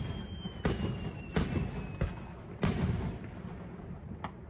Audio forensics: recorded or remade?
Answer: recorded